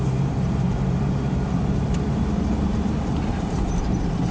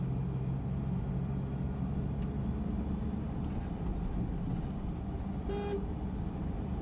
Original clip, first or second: second